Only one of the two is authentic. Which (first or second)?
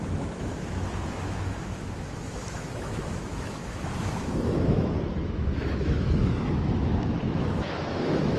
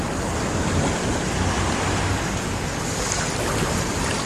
second